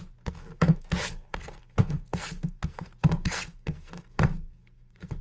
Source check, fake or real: fake